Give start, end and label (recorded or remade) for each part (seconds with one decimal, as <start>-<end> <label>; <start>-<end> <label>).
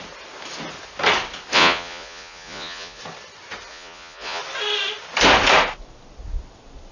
0.0-1.5 recorded; 1.5-3.0 remade; 3.0-3.7 recorded; 3.7-4.4 remade; 4.4-6.9 recorded